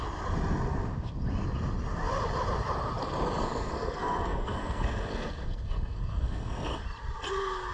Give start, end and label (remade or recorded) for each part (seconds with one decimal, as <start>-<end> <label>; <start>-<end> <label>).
0.0-3.4 recorded; 3.4-6.8 remade; 6.8-7.7 recorded